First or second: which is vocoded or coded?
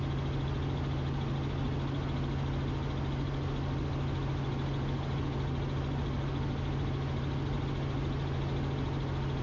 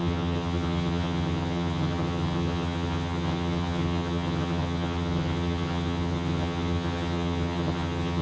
second